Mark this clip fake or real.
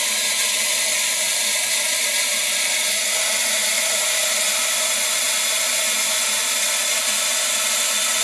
real